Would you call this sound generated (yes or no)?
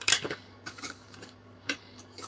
yes